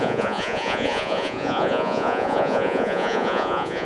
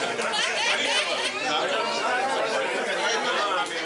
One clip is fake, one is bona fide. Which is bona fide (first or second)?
second